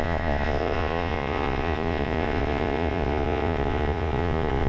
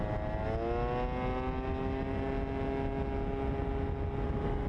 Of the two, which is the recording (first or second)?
second